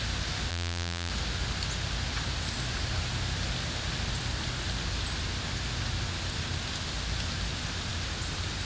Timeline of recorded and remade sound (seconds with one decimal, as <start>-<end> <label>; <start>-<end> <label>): 0.0-0.5 recorded; 0.5-1.1 remade; 1.1-8.6 recorded